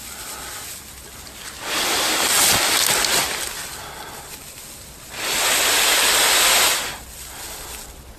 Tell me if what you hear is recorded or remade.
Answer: recorded